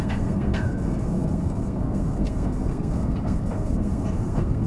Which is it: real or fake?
fake